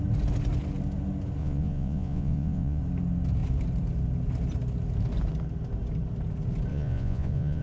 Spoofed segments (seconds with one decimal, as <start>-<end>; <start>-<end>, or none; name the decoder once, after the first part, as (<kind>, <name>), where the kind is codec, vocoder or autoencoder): 1.4-2.8 (vocoder, Vocos); 6.7-7.6